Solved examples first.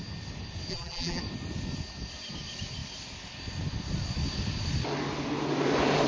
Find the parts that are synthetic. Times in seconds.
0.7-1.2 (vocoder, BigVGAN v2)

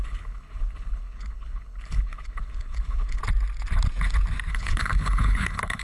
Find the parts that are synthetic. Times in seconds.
0.0-3.2 (codec, HILCodec); 4.5-5.8

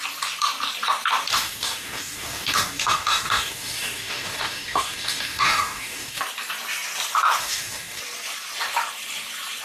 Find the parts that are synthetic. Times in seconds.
1.3-6.2 (codec, DAC); 7.4-8.0

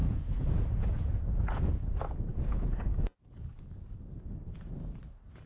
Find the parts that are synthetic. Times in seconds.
0.0-1.7 (vocoder, Vocos); 2.3-2.8; 3.5-4.3

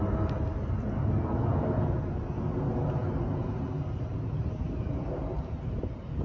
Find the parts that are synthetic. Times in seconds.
none